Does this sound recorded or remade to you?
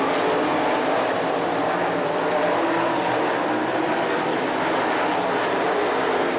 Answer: recorded